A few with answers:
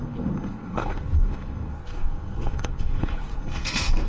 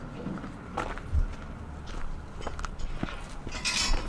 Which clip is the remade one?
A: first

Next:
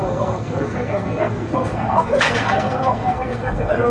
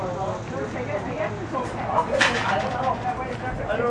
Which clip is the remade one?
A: first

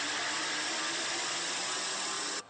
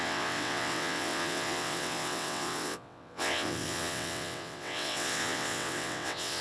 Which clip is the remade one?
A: second